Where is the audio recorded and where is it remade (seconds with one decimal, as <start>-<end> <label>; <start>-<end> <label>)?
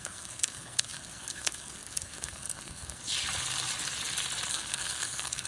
0.0-3.0 remade; 3.0-4.5 recorded; 4.5-5.5 remade